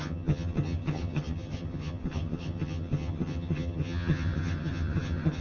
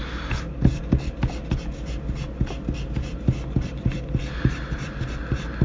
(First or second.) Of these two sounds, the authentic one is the second